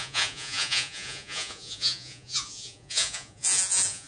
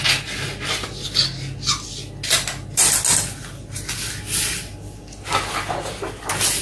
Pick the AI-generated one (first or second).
first